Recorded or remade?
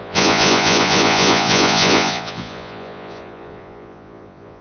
remade